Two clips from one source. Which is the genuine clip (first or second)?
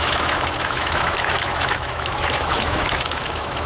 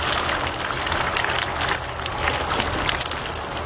second